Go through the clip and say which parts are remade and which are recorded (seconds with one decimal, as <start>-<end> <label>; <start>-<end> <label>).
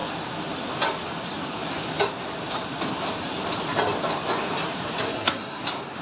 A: 0.0-5.1 recorded; 5.1-5.6 remade; 5.6-6.0 recorded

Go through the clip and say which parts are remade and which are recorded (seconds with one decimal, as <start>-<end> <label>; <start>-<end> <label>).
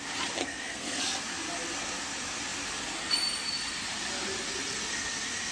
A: 0.0-0.4 recorded; 0.4-1.0 remade; 1.0-5.5 recorded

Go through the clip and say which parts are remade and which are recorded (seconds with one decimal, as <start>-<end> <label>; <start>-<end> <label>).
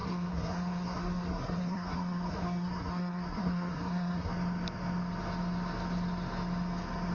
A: 0.0-4.3 remade; 4.3-7.1 recorded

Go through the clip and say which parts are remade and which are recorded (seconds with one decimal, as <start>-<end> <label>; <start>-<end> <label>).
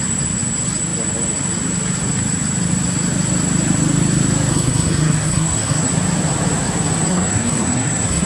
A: 0.0-4.5 recorded; 4.5-5.9 remade; 5.9-7.1 recorded; 7.1-8.3 remade